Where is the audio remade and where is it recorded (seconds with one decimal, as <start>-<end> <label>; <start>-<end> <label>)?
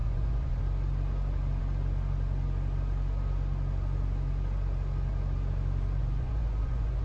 0.0-0.6 remade; 0.6-6.0 recorded; 6.0-7.0 remade